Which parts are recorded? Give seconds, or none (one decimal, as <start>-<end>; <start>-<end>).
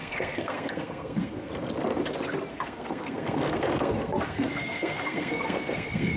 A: 1.5-2.5